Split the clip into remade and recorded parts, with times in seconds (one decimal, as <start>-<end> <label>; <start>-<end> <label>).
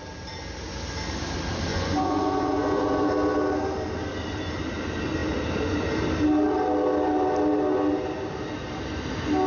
0.0-1.7 recorded; 1.7-3.1 remade; 3.1-9.5 recorded